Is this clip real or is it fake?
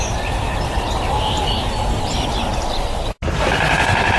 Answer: real